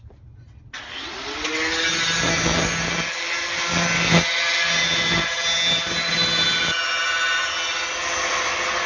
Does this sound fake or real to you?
real